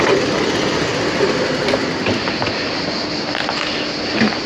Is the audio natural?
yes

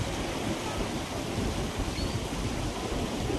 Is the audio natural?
yes